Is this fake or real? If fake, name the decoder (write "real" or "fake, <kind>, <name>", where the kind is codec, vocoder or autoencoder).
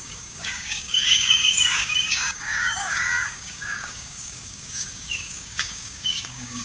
fake, codec, DAC